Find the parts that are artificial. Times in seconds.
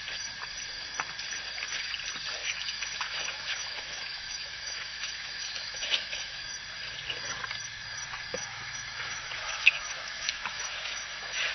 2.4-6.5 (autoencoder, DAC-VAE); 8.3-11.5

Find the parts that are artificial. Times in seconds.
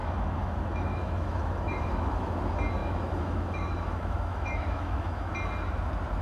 0.0-2.4 (autoencoder, DAC-VAE); 2.8-5.3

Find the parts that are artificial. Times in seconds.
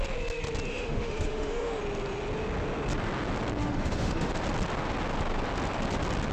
0.7-1.8 (autoencoder, DAC-VAE); 3.6-4.3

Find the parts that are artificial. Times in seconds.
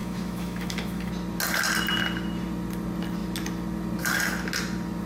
0.0-1.1 (autoencoder, DAC-VAE)